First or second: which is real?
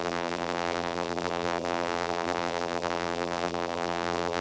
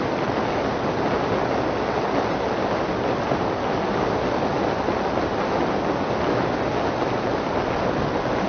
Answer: second